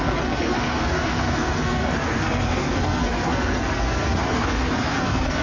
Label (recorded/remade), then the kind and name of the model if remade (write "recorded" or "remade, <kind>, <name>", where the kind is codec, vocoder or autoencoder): remade, codec, SNAC